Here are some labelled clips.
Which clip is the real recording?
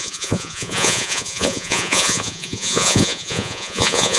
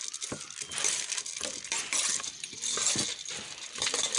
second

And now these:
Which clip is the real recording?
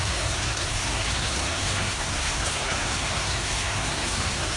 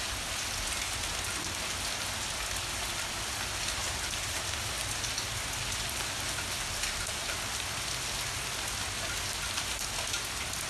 second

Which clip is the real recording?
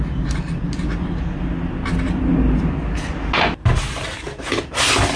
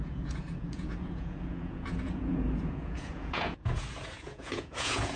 first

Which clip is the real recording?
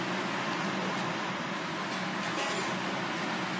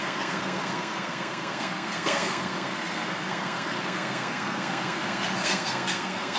first